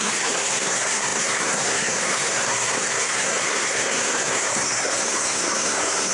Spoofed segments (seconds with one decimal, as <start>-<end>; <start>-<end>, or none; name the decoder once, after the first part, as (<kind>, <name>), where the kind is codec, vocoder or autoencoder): 0.0-6.1 (codec, SNAC)